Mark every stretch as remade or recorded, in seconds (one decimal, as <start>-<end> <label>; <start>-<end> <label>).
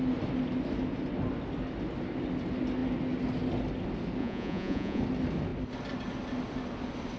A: 0.0-4.2 recorded; 4.2-5.0 remade; 5.0-7.2 recorded